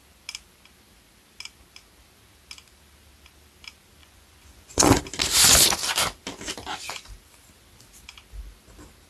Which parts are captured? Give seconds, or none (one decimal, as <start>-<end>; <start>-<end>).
0.0-4.0; 5.0-9.1